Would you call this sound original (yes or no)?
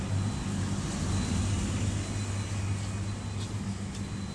yes